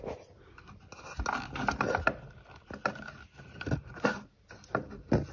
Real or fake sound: real